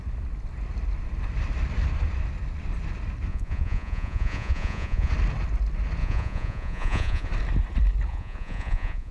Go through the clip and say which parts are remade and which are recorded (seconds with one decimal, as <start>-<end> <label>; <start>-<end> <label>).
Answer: 0.0-3.3 recorded; 3.3-5.1 remade; 5.1-6.0 recorded; 6.0-7.3 remade; 7.3-8.1 recorded; 8.1-9.1 remade